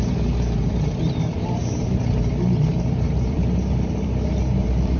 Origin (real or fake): fake